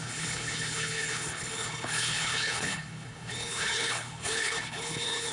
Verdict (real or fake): fake